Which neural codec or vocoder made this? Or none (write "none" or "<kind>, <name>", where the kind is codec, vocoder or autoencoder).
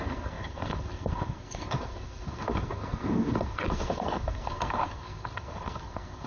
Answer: codec, SNAC